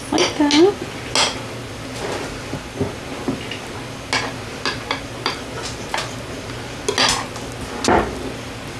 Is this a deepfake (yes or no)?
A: no